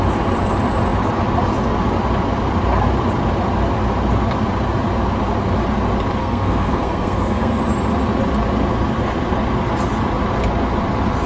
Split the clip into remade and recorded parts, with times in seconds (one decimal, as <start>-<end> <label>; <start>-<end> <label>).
0.0-6.2 recorded; 6.2-7.6 remade; 7.6-11.3 recorded